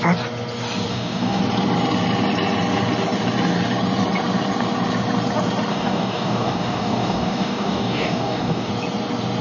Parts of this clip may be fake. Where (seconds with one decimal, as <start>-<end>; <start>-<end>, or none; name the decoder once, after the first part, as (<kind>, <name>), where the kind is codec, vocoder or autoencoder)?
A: 0.9-1.4 (codec, DAC); 5.7-8.7